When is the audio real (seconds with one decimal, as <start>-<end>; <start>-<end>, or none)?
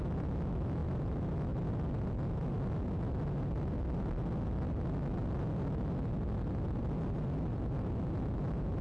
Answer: 0.0-8.8